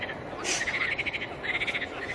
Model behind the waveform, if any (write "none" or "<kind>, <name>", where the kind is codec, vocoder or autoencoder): none